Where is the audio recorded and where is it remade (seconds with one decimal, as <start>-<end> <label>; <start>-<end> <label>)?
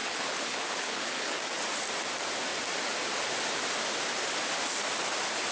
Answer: 0.0-1.4 remade; 1.4-5.5 recorded